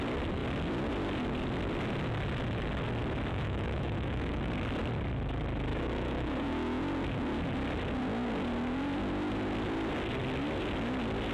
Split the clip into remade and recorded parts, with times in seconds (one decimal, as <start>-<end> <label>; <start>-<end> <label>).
0.0-3.3 recorded; 3.3-4.5 remade; 4.5-5.7 recorded; 5.7-6.8 remade; 6.8-11.3 recorded